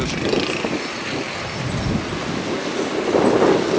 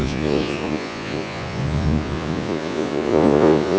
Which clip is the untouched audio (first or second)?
first